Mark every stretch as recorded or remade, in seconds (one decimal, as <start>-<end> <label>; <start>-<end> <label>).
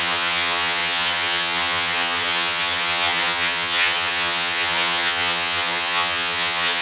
0.0-6.8 remade